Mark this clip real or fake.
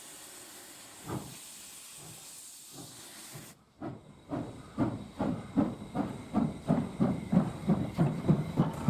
fake